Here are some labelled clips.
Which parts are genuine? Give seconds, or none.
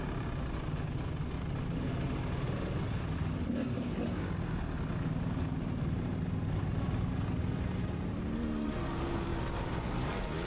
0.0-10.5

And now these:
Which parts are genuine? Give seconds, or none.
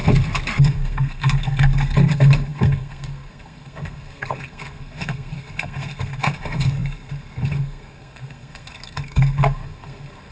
0.0-0.6